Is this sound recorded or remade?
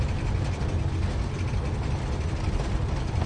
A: recorded